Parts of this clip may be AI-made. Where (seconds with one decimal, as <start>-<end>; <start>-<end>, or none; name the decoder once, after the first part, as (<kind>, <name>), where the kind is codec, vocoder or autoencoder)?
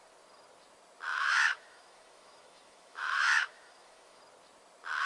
1.1-4.2 (autoencoder, DAC-VAE)